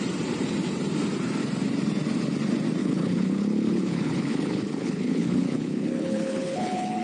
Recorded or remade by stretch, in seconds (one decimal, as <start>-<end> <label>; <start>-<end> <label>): 0.0-2.8 recorded; 2.8-7.0 remade